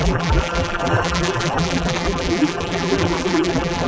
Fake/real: fake